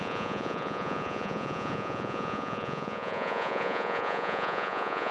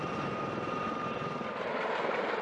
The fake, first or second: first